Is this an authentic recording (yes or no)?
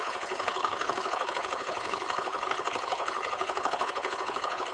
no